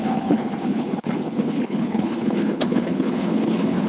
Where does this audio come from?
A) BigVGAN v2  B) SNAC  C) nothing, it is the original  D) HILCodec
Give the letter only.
D